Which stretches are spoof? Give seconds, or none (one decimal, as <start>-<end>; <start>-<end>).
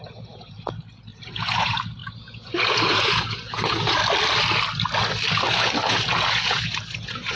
0.0-4.0; 5.5-7.4